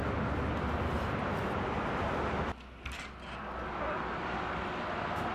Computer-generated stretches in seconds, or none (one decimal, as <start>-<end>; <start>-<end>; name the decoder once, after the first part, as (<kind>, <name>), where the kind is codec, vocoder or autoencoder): none